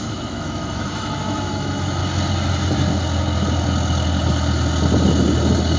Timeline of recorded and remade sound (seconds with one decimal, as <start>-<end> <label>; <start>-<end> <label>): 0.0-2.0 remade; 2.0-5.8 recorded